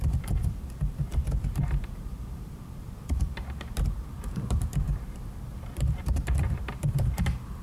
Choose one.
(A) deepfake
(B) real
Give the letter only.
A